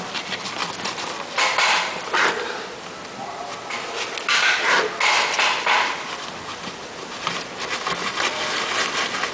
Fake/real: real